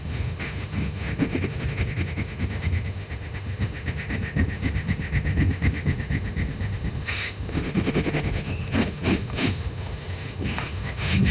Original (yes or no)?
no